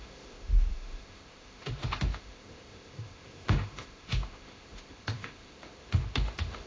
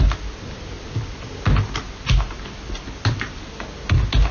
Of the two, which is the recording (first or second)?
second